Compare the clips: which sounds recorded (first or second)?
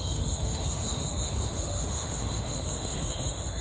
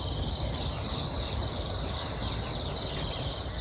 second